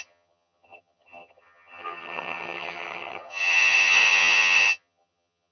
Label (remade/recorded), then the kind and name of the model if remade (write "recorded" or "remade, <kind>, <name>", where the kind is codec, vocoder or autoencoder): remade, vocoder, HiFi-GAN